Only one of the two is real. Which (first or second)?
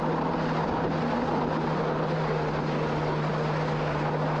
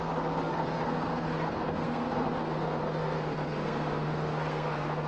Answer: first